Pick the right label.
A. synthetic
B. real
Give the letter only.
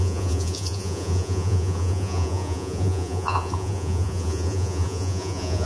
A